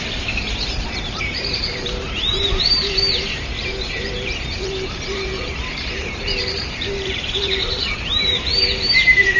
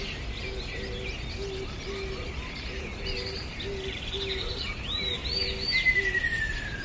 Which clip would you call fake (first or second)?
first